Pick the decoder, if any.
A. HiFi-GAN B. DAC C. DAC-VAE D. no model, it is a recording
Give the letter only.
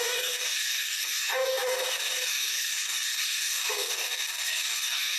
B